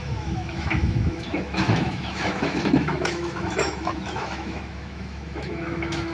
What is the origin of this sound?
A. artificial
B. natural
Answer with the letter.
A